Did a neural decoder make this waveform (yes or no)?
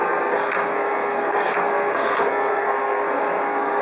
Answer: yes